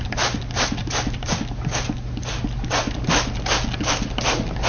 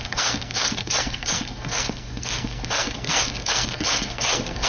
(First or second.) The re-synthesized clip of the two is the second